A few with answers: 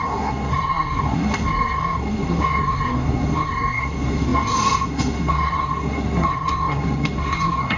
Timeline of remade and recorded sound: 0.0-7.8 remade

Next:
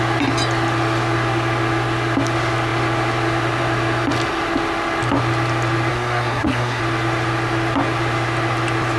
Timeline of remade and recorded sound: 0.0-5.9 recorded; 5.9-6.8 remade; 6.8-9.0 recorded

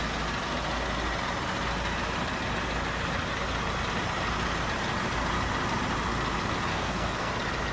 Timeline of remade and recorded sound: 0.0-6.7 recorded; 6.7-7.3 remade; 7.3-7.7 recorded

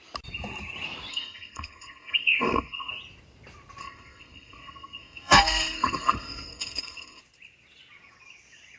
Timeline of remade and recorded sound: 0.0-1.1 recorded; 1.1-2.9 remade; 2.9-3.8 recorded; 3.8-7.2 remade; 7.2-8.8 recorded

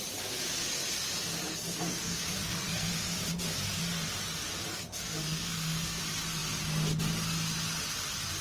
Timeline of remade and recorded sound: 0.0-1.5 recorded; 1.5-2.9 remade; 2.9-4.7 recorded; 4.7-6.0 remade; 6.0-8.4 recorded

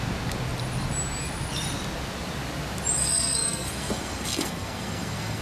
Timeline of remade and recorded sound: 0.0-3.0 recorded; 3.0-5.4 remade

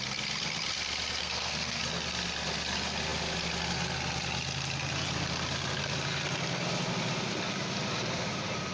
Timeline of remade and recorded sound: 0.0-1.2 recorded; 1.2-1.8 remade; 1.8-8.7 recorded

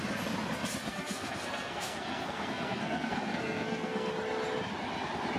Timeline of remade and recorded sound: 0.0-0.9 recorded; 0.9-4.1 remade; 4.1-5.4 recorded